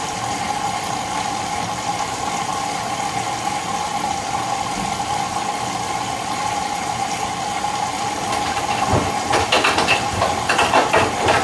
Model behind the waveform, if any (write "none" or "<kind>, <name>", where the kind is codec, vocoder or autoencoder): none